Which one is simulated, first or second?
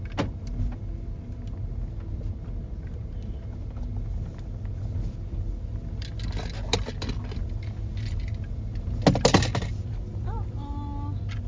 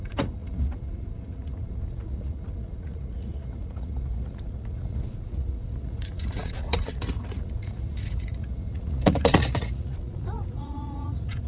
second